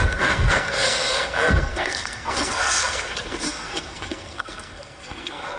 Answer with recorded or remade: remade